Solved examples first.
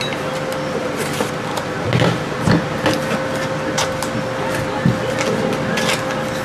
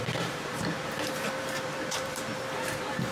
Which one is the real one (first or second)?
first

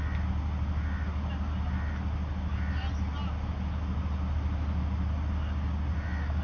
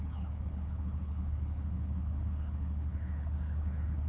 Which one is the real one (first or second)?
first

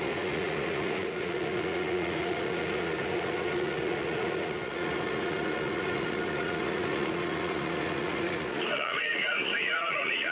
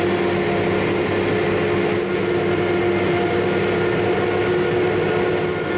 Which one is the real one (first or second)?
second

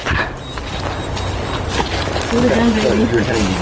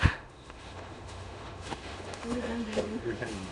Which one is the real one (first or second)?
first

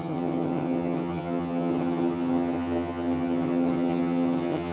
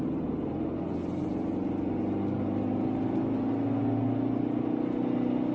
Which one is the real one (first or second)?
second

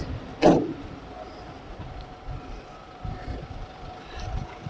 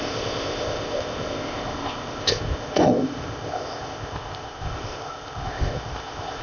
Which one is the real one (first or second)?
first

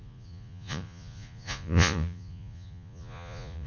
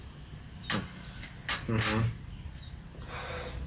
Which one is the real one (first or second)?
second